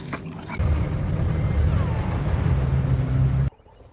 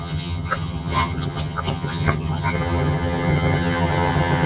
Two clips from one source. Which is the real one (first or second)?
first